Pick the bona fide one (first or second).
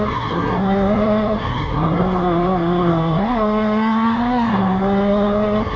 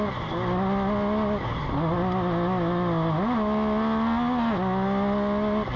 second